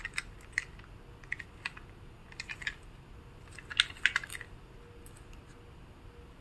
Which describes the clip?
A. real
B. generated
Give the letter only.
A